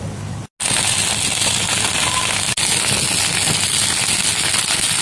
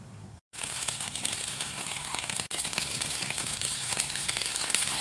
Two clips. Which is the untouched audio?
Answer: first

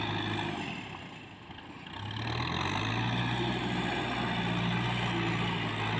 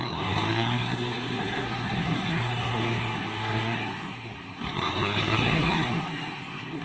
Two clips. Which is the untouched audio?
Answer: first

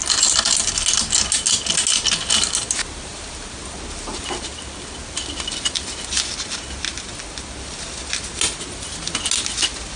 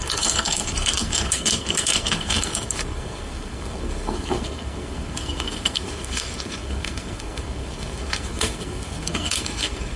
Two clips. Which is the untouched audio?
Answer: first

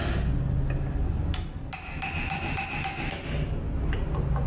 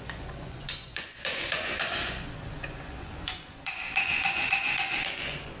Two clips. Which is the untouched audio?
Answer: first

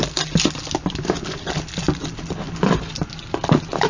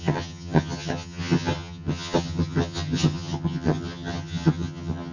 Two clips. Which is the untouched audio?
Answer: first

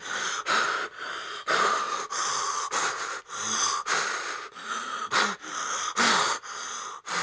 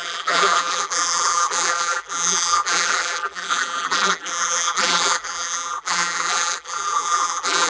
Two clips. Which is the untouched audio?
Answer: first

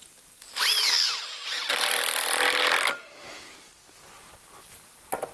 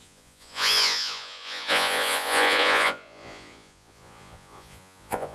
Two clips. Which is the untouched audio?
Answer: first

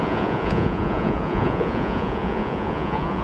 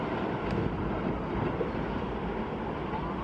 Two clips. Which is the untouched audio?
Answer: second